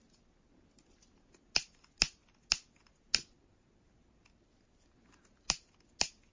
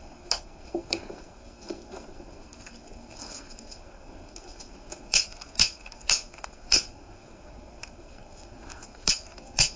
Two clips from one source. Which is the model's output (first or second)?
second